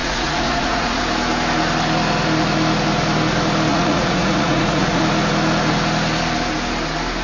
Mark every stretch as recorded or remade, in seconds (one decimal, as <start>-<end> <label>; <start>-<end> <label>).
0.0-1.0 remade; 1.0-3.7 recorded; 3.7-5.0 remade; 5.0-7.2 recorded